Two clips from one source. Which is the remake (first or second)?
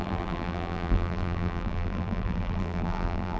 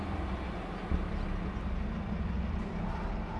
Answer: first